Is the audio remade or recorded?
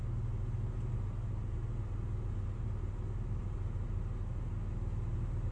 recorded